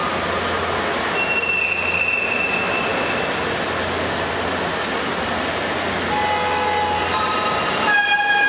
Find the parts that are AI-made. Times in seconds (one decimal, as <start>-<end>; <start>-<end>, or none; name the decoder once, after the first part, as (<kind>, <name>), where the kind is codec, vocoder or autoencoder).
none